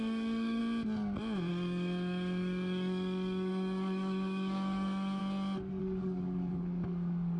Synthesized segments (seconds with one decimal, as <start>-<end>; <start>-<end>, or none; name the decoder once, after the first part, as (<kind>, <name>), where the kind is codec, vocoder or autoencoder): 0.0-0.6 (codec, DAC); 1.5-5.2; 5.8-7.4